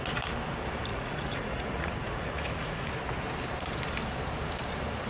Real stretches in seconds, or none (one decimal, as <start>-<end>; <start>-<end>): 0.0-0.9; 2.9-5.1